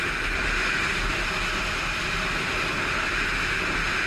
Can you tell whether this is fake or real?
real